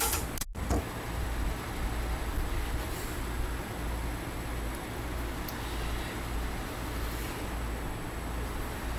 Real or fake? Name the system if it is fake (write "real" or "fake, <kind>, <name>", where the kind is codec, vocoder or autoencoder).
real